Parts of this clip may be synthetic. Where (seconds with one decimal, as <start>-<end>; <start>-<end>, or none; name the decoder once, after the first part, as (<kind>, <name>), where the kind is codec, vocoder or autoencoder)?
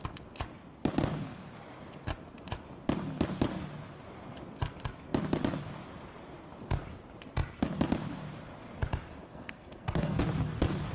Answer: 9.3-10.2 (codec, SNAC)